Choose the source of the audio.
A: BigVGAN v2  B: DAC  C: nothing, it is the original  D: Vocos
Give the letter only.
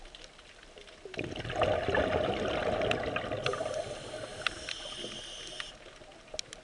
C